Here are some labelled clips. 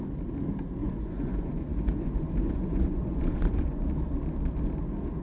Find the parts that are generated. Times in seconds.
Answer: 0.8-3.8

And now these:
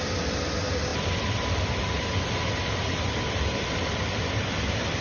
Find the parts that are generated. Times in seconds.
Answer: none

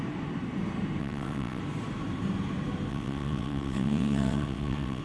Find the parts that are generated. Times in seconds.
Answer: 1.0-1.6; 2.9-5.0

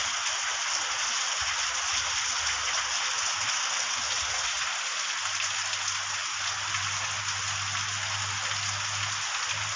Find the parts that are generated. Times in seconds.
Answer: none

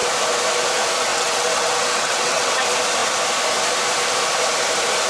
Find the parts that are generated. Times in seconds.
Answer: 1.1-2.6

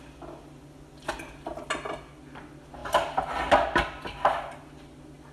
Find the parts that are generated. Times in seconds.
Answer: none

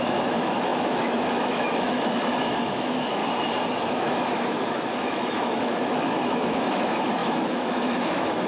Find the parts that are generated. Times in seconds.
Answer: 0.0-3.2; 3.9-8.5

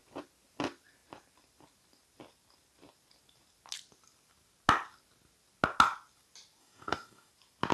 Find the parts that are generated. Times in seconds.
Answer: 6.6-7.3